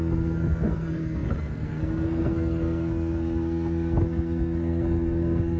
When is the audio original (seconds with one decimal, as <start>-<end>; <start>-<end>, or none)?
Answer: none